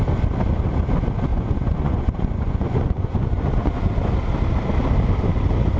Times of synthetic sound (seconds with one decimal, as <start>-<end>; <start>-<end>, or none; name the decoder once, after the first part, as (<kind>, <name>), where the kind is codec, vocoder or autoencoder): 1.3-3.8 (vocoder, Vocos)